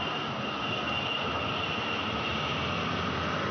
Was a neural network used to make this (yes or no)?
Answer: no